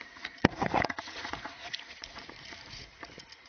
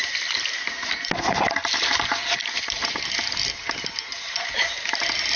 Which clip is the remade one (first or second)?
first